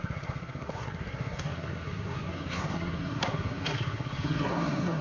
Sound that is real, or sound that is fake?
fake